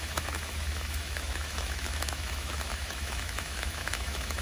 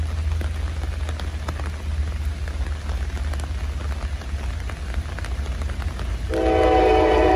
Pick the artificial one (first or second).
first